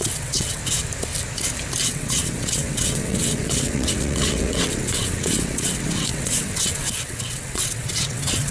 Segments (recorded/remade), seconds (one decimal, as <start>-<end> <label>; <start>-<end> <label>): 0.0-0.6 remade; 0.6-1.8 recorded; 1.8-8.5 remade